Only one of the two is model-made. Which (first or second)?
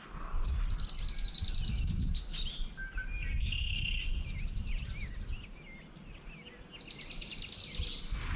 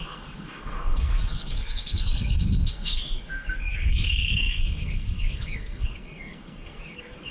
second